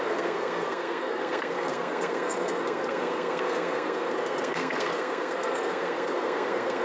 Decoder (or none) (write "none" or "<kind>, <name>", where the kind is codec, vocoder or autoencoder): codec, SNAC